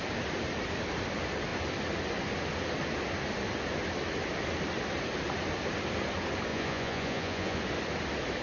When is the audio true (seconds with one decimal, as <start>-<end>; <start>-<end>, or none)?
0.0-6.5; 7.6-8.4